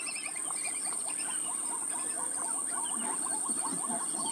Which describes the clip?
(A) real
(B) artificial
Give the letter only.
A